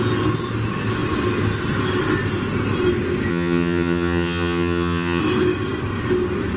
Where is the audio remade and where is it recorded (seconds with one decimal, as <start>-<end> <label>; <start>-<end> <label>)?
0.0-3.3 recorded; 3.3-5.2 remade; 5.2-6.6 recorded